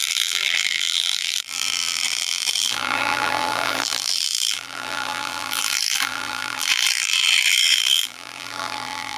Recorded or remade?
remade